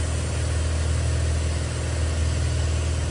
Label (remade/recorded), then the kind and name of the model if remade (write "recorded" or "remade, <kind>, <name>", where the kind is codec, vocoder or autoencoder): recorded